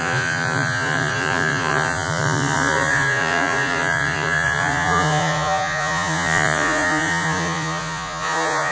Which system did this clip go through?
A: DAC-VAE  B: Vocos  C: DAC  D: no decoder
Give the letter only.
B